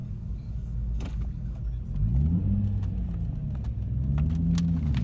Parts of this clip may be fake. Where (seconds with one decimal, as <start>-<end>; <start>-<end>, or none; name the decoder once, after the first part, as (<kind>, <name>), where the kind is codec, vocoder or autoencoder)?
0.0-1.6 (codec, DAC)